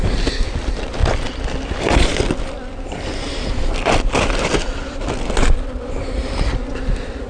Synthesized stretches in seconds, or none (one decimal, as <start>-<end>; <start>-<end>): none